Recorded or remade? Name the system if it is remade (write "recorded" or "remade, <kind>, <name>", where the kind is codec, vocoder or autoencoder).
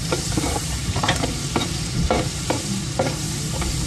remade, vocoder, BigVGAN v2